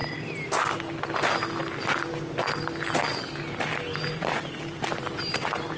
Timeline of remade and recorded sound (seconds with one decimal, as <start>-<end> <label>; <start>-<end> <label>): 0.0-3.9 recorded; 3.9-4.5 remade; 4.5-5.8 recorded